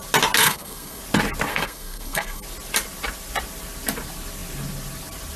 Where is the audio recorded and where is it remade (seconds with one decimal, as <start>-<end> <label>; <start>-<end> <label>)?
0.0-0.4 recorded; 0.4-1.0 remade; 1.0-1.5 recorded; 1.5-2.4 remade; 2.4-5.4 recorded